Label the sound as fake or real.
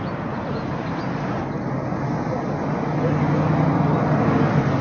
real